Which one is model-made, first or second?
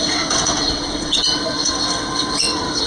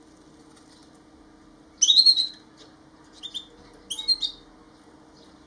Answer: first